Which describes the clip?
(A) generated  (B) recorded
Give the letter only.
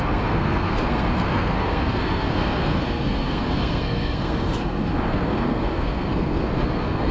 A